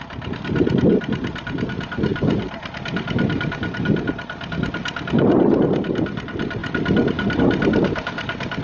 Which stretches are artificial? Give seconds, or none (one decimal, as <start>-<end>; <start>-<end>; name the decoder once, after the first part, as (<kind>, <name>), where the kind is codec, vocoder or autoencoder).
none